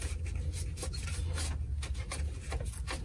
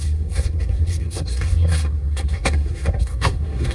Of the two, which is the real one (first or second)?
first